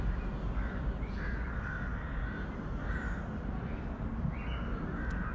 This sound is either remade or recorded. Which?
recorded